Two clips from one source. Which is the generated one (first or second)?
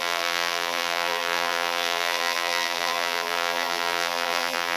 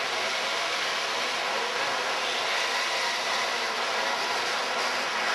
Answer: first